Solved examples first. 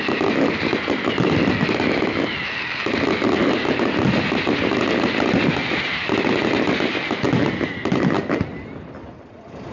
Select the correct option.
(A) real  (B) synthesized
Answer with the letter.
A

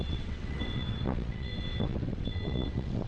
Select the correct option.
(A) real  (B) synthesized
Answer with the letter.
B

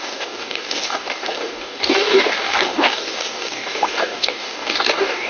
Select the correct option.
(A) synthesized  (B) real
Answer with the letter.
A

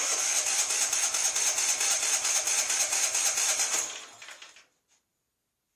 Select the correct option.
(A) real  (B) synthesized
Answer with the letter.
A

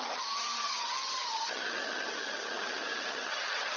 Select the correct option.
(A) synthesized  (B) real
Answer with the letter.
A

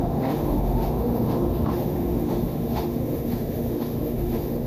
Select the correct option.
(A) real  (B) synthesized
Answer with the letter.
B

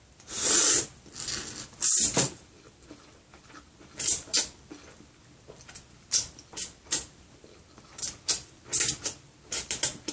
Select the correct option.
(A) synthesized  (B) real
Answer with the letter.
B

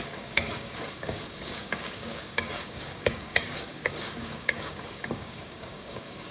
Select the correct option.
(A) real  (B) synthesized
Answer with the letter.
B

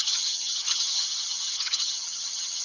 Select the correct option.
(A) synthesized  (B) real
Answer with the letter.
A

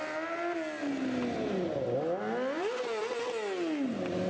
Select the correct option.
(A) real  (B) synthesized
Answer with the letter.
A